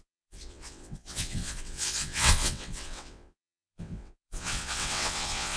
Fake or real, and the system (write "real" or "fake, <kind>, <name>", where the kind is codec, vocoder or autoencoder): fake, vocoder, WaveNeXt